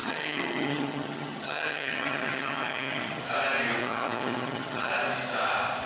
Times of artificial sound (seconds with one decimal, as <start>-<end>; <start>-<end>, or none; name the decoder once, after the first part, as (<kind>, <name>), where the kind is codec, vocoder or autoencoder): 0.0-3.2 (vocoder, HiFi-GAN); 3.8-4.9